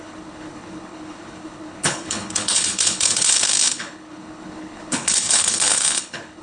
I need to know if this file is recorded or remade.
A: remade